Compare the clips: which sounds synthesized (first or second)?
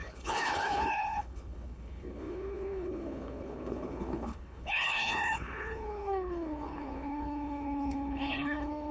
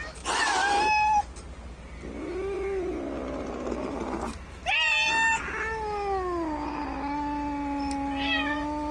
first